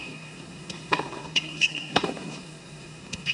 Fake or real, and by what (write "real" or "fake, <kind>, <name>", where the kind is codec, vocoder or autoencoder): fake, codec, SNAC